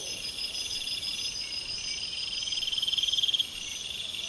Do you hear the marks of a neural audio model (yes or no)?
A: yes